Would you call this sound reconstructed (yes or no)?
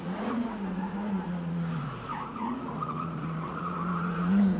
yes